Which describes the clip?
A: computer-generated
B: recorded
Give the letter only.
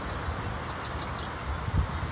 B